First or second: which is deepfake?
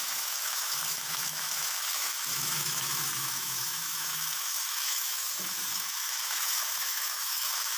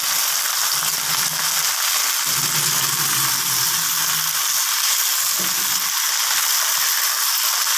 first